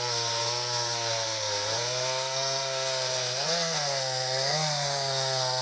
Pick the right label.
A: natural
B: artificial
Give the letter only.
B